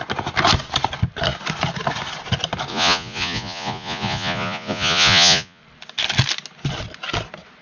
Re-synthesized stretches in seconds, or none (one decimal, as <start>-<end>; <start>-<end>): 2.7-5.6